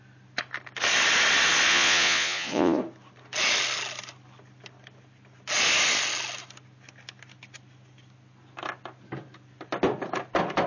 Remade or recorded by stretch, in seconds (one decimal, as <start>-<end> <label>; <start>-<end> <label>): 0.0-1.7 recorded; 1.7-2.8 remade; 2.8-10.7 recorded